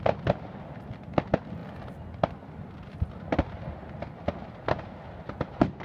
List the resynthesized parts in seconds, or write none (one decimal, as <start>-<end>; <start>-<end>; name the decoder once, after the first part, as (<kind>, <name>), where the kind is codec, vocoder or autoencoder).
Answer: none